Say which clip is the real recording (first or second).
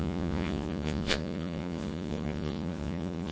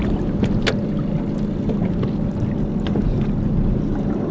second